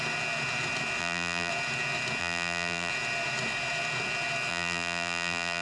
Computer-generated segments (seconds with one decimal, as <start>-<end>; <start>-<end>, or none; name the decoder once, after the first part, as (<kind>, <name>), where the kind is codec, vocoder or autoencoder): 1.0-1.5 (vocoder, BigVGAN v2); 2.2-2.9; 4.5-5.6